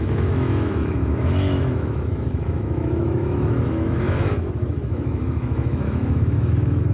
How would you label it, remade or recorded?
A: remade